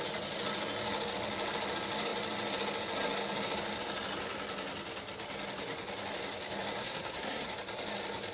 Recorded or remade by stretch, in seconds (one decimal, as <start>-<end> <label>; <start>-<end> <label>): 0.0-6.8 recorded; 6.8-7.5 remade; 7.5-8.3 recorded